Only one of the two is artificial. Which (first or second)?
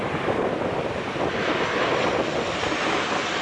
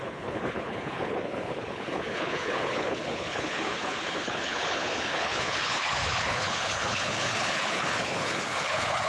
second